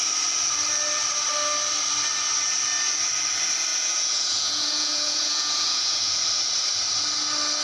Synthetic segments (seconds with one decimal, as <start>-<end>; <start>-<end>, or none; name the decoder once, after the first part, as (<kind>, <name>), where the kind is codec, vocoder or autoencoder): 3.7-6.2 (vocoder, Vocos)